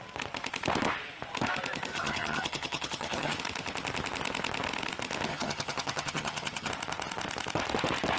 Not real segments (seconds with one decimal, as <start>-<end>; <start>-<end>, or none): 1.9-3.4; 5.3-6.7